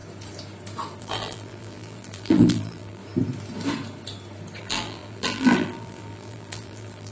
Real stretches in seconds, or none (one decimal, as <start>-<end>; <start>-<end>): 0.0-1.0; 3.0-4.6